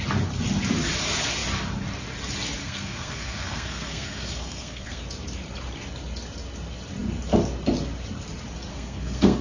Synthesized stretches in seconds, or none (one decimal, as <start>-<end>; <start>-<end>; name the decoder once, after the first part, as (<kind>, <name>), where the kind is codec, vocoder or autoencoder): 2.6-5.0 (codec, SNAC); 8.7-9.4